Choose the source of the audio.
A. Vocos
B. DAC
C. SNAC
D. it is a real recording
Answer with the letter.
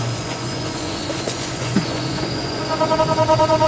A